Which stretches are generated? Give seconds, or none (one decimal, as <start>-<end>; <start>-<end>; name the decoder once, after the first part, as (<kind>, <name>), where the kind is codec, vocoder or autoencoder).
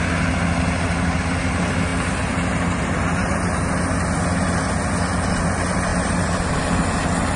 none